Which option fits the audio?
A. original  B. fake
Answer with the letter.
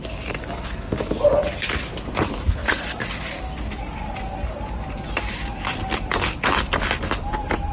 A